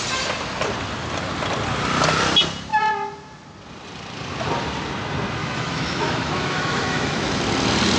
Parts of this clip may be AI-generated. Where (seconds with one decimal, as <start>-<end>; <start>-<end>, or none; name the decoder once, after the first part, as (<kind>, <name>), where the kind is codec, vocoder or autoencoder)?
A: 5.4-7.4 (autoencoder, DAC-VAE)